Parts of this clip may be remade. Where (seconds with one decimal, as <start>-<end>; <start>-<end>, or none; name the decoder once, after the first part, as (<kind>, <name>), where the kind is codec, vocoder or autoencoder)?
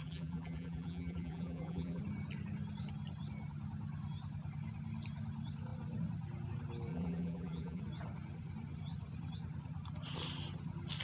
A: 0.0-2.0 (vocoder, BigVGAN v2); 6.9-7.8